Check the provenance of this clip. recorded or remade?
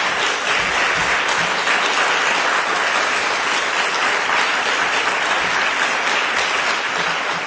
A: recorded